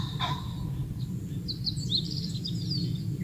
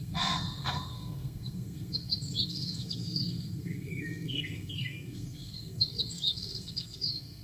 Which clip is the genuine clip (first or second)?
first